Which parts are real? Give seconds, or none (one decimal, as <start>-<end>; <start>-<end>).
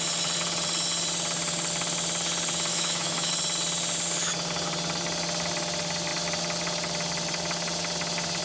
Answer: 0.0-2.7; 3.3-8.4